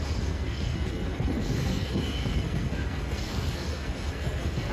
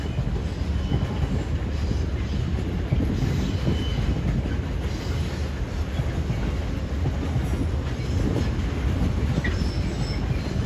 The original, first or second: second